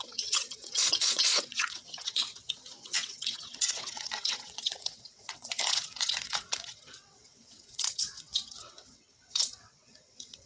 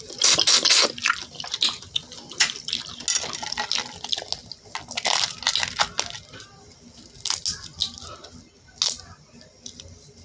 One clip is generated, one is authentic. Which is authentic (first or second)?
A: second